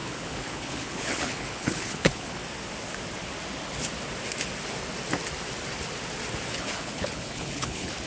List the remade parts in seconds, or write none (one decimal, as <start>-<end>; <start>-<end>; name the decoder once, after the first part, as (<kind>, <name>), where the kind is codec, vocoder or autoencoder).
0.0-2.4 (codec, HILCodec); 6.5-8.1